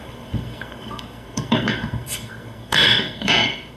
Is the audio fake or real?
fake